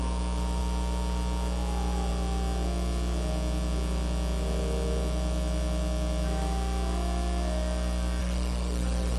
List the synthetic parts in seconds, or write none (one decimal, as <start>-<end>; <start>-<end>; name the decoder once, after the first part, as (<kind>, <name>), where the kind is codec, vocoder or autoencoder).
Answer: 8.2-9.2 (codec, SNAC)